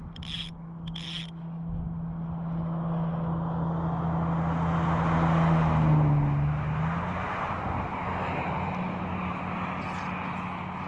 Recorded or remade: recorded